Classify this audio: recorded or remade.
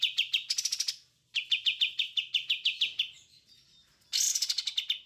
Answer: recorded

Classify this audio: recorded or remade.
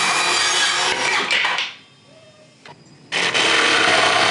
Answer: recorded